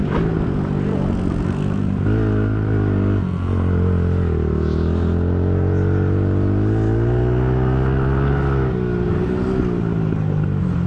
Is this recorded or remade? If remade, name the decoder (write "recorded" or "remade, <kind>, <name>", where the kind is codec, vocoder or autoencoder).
recorded